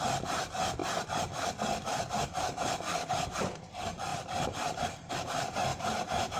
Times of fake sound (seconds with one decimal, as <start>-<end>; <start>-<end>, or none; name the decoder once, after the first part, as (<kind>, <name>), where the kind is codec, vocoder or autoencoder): 4.1-5.1 (vocoder, BigVGAN v2); 5.7-6.4